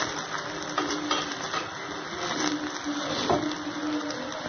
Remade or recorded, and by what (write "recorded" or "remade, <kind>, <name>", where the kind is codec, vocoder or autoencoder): recorded